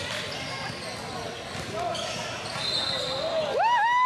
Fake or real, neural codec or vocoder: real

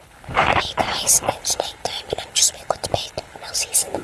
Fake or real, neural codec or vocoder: fake, codec, HILCodec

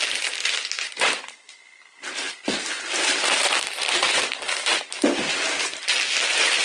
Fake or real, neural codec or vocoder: real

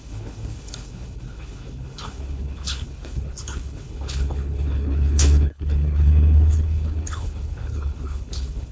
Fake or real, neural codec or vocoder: fake, codec, HILCodec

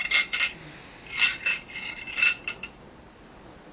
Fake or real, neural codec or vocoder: real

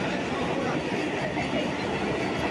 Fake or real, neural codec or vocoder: real